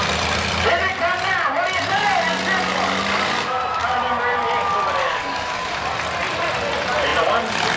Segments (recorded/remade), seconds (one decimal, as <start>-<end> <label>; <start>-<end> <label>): 0.0-5.0 recorded; 5.0-5.8 remade; 5.8-7.8 recorded